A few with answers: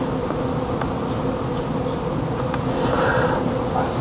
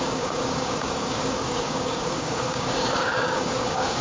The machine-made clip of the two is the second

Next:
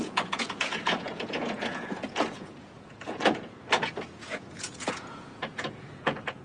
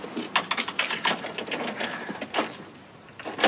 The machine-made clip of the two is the first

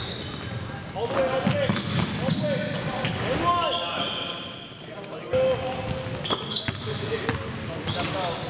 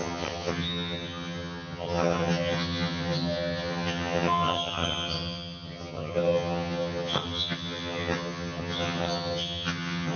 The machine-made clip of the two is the second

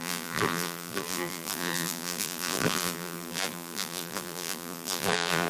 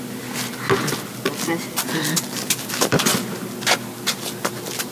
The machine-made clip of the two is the first